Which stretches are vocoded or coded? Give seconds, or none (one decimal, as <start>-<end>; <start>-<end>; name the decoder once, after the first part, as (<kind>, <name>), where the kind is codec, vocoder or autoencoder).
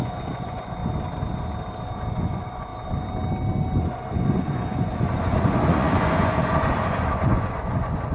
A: 0.0-0.8 (vocoder, Vocos); 2.2-2.7; 3.8-8.1